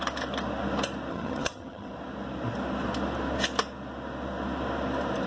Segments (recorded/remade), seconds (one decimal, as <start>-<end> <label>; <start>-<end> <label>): 0.0-1.1 recorded; 1.1-1.9 remade; 1.9-5.3 recorded